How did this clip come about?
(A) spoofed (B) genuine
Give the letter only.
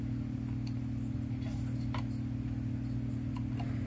B